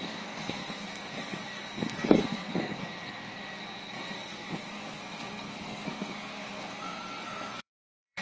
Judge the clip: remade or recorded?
remade